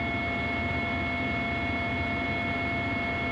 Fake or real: real